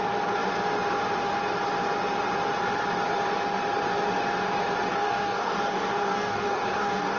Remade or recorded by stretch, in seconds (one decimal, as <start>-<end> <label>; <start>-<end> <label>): 0.0-4.9 recorded; 4.9-7.2 remade